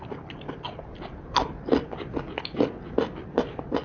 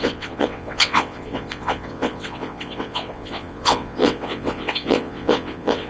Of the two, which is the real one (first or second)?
first